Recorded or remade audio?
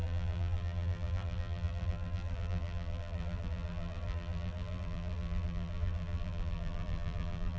remade